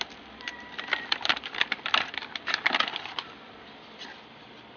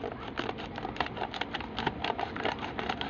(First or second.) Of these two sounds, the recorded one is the second